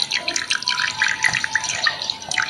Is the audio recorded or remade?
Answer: recorded